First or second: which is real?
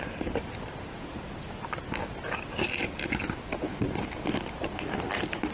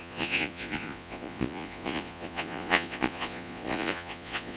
first